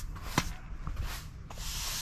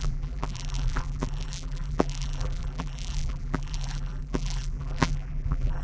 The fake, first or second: second